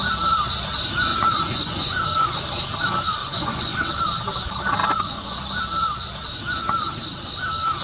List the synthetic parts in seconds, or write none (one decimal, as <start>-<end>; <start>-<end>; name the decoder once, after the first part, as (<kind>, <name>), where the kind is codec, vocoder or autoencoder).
1.1-2.4 (vocoder, Vocos); 3.2-3.9; 4.8-5.4